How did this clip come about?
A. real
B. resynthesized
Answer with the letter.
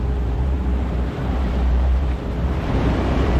B